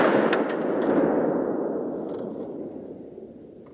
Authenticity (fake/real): real